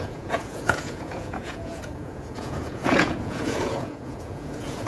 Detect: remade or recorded remade